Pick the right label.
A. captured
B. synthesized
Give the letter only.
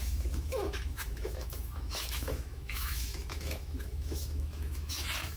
B